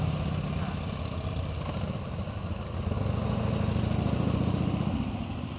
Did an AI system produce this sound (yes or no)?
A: no